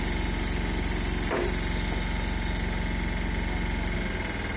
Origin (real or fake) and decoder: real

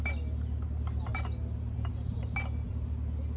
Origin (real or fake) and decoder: real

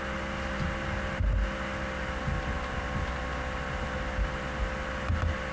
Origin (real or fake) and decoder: real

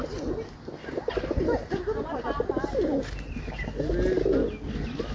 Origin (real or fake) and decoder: real